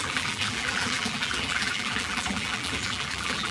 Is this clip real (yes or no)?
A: no